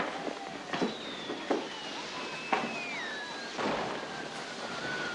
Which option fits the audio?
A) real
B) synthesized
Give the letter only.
A